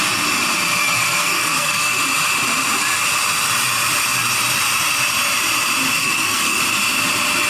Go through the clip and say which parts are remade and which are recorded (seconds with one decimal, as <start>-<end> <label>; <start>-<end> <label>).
0.0-0.8 recorded; 0.8-2.0 remade; 2.0-6.0 recorded; 6.0-6.6 remade; 6.6-7.5 recorded